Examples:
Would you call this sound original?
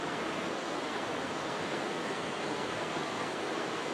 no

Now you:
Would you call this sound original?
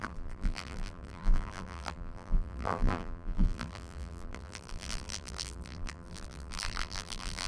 no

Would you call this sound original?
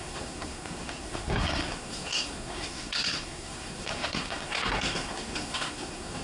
no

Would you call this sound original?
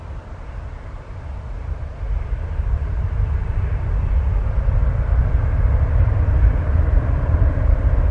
no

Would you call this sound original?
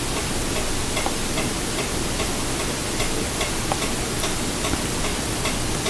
yes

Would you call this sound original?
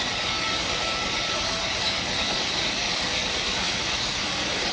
no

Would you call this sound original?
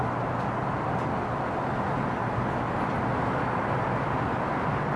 yes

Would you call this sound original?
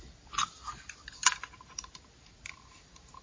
yes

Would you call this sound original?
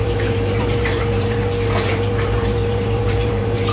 no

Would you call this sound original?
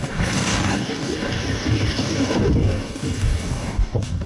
no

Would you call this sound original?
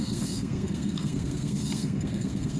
no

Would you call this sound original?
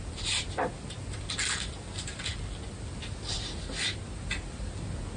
yes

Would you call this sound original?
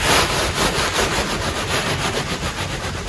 yes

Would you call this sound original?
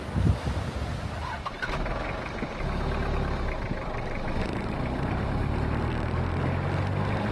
yes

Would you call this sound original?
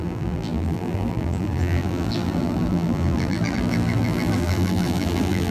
no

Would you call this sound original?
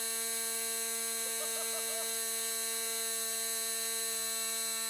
yes